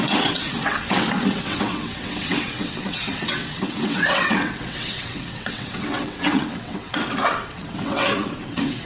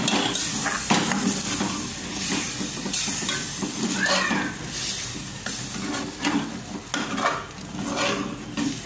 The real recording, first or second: second